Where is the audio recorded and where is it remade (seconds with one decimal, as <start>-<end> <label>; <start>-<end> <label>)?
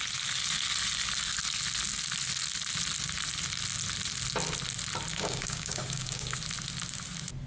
0.0-5.1 recorded; 5.1-6.4 remade; 6.4-7.5 recorded